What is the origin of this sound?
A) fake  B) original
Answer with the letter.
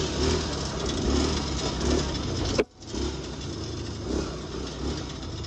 B